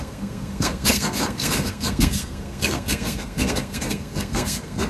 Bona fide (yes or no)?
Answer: no